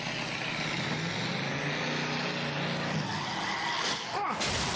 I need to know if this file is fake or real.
real